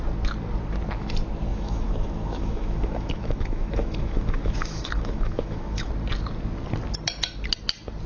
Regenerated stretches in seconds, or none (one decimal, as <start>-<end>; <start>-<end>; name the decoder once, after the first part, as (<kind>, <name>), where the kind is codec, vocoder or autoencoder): 1.5-5.9 (autoencoder, DAC-VAE)